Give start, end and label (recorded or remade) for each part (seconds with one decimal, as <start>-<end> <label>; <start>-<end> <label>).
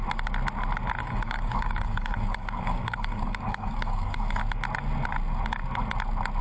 0.0-1.0 recorded; 1.0-4.4 remade; 4.4-6.4 recorded